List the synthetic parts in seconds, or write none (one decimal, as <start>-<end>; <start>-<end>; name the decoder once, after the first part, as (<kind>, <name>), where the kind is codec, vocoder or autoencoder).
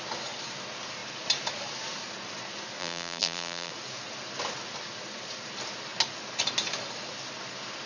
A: 2.8-3.7 (vocoder, BigVGAN v2)